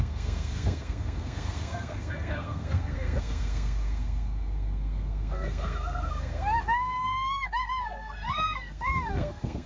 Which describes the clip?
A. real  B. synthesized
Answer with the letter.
B